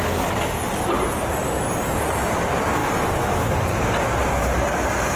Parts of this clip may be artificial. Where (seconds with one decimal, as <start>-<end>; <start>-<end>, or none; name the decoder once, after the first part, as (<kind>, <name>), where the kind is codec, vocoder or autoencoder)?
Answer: 2.8-3.5 (autoencoder, DAC-VAE)